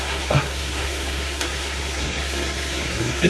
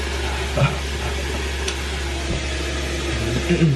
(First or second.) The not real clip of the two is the first